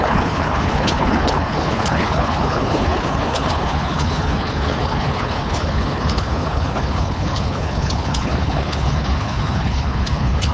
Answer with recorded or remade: remade